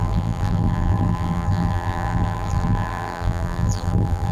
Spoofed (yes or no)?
yes